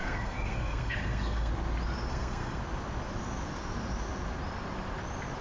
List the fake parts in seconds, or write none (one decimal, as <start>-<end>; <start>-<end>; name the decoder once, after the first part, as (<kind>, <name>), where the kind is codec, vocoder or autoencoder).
0.0-1.5 (codec, SNAC); 2.1-2.6